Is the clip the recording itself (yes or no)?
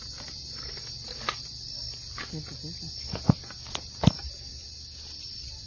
yes